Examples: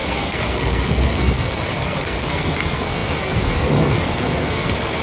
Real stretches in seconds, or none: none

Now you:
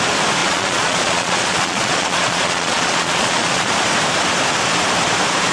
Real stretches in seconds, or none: 0.0-0.4; 3.7-5.5

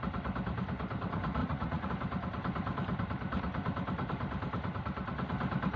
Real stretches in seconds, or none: 0.0-1.4; 1.9-5.8